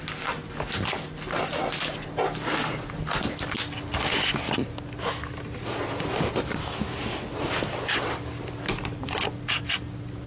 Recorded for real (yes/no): yes